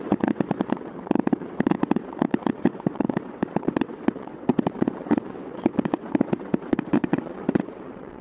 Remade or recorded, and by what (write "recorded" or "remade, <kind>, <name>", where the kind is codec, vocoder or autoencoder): remade, vocoder, WaveNeXt